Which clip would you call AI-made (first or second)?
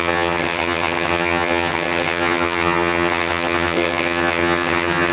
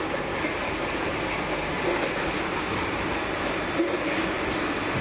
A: first